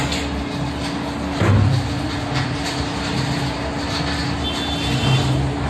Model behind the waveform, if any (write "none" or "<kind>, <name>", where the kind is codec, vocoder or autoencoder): none